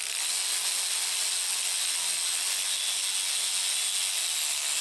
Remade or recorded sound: recorded